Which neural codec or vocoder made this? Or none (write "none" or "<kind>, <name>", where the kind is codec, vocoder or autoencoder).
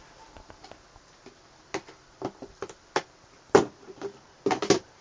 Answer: none